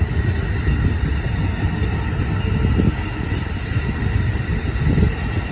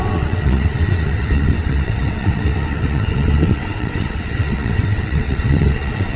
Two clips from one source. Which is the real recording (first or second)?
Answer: first